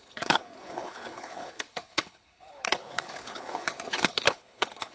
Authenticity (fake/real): fake